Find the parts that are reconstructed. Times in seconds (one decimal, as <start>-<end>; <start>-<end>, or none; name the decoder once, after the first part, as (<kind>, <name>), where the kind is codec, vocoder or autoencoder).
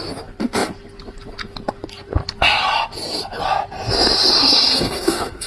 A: 4.4-5.5 (codec, SNAC)